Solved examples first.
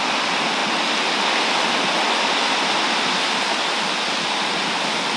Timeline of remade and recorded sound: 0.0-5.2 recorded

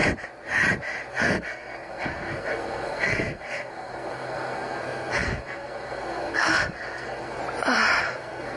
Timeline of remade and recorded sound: 0.0-1.1 recorded; 1.1-7.4 remade; 7.4-8.0 recorded; 8.0-8.6 remade

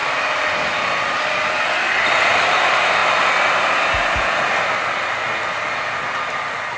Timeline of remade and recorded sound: 0.0-1.7 remade; 1.7-6.8 recorded

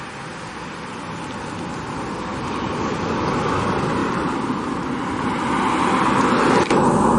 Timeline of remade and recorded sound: 0.0-4.0 recorded; 4.0-4.8 remade; 4.8-7.2 recorded

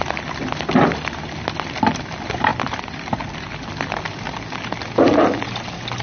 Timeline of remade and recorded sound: 0.0-6.0 recorded